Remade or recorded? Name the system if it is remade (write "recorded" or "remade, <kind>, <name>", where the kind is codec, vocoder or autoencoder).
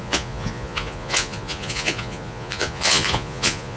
remade, vocoder, Vocos